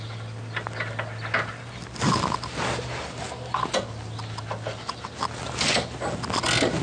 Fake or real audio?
real